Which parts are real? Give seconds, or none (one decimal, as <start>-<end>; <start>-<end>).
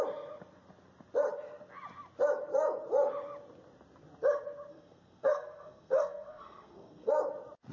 0.0-4.7; 7.1-7.7